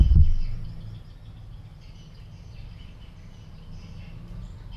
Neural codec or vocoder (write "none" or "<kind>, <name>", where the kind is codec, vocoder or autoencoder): none